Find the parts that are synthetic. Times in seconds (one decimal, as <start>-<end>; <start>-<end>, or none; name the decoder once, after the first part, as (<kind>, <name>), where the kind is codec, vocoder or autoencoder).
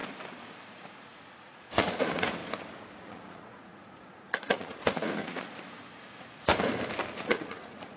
0.6-2.4 (vocoder, Vocos); 3.0-6.5; 7.1-8.0